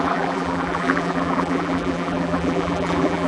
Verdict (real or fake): fake